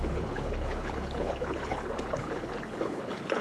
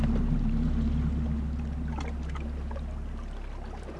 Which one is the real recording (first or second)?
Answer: second